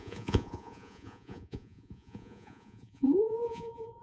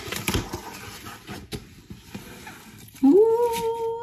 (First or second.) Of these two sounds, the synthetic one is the first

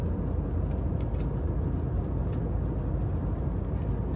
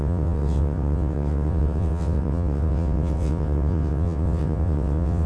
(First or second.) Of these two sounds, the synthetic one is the second